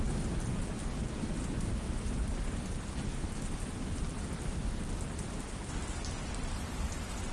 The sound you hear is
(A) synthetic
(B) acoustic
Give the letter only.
B